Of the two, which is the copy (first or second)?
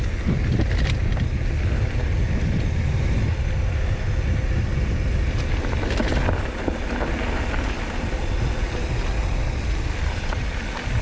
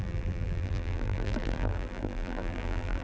second